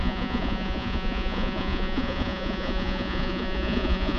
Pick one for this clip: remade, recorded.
remade